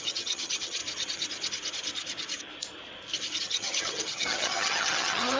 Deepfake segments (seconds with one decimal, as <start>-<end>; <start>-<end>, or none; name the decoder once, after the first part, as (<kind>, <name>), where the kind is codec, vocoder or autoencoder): 0.0-0.8 (vocoder, HiFi-GAN); 3.4-5.4